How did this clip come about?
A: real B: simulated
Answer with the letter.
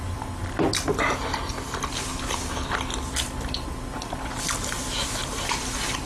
B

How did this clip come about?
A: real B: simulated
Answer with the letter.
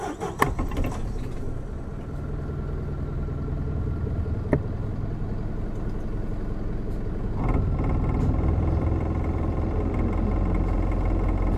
A